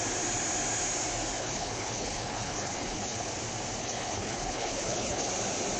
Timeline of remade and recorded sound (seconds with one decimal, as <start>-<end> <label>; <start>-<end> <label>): 0.0-1.4 recorded; 1.4-3.3 remade; 3.3-3.8 recorded; 3.8-5.3 remade; 5.3-5.8 recorded

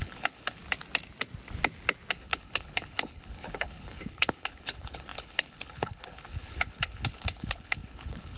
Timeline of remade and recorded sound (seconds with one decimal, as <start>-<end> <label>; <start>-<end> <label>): 0.0-0.6 remade; 0.6-2.1 recorded; 2.1-8.4 remade

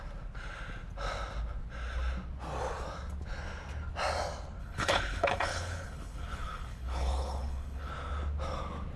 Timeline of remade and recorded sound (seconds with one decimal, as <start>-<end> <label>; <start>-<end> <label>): 0.0-4.6 recorded; 4.6-7.9 remade; 7.9-9.0 recorded

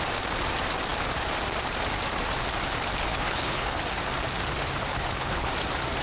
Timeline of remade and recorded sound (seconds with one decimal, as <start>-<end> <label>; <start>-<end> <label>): 0.0-3.1 recorded; 3.1-3.8 remade; 3.8-4.9 recorded; 4.9-5.5 remade; 5.5-6.0 recorded

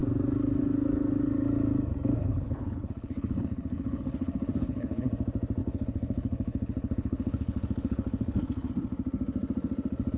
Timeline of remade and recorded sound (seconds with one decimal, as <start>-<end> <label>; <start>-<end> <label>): 0.0-2.2 recorded; 2.2-5.1 remade; 5.1-5.6 recorded; 5.6-8.7 remade; 8.7-10.2 recorded

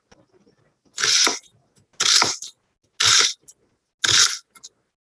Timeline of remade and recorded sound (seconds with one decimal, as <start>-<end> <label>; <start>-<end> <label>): 0.0-5.0 recorded

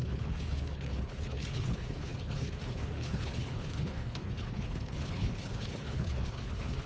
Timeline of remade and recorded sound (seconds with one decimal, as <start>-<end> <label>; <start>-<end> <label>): 0.0-6.9 remade

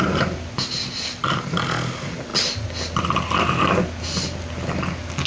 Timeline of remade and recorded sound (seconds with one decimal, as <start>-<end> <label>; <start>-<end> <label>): 0.0-5.3 recorded